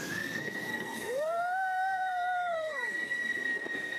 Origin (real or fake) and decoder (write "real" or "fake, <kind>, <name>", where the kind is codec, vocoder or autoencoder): fake, codec, SNAC